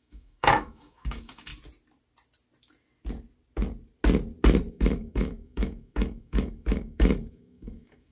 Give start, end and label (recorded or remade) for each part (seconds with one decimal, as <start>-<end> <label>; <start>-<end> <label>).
0.0-1.5 remade; 1.5-4.7 recorded; 4.7-8.1 remade